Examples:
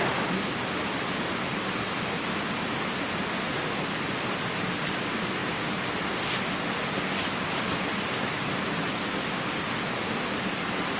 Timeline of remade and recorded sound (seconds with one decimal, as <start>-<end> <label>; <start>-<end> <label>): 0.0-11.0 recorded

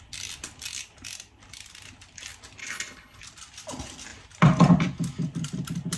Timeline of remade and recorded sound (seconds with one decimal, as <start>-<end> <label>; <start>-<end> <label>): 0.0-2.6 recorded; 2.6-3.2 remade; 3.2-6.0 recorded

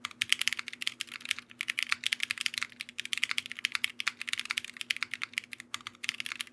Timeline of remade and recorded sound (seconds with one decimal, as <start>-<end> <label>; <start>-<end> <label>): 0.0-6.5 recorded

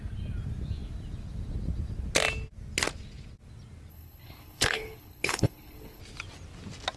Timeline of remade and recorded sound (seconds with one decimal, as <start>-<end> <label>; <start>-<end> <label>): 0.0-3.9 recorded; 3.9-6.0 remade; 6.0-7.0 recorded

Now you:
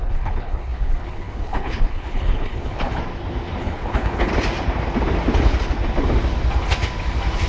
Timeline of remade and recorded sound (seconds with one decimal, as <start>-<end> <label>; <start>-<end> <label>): 0.0-3.0 remade; 3.0-3.6 recorded; 3.6-4.3 remade; 4.3-7.5 recorded

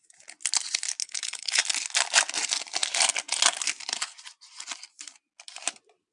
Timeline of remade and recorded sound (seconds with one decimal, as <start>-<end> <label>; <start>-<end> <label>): 0.0-1.0 recorded; 1.0-1.6 remade; 1.6-6.1 recorded